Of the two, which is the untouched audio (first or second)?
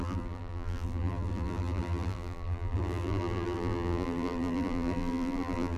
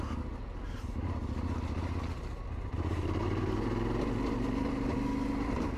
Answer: second